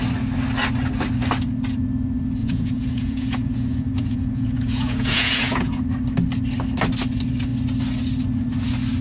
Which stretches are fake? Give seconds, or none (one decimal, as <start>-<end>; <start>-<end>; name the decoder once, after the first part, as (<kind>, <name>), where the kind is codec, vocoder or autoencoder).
2.4-5.8 (vocoder, Vocos)